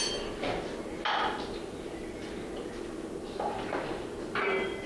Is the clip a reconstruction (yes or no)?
no